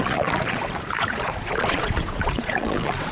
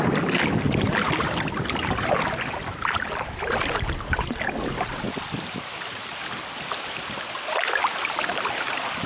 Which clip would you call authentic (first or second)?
second